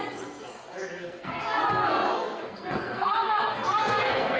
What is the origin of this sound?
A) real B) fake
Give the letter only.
B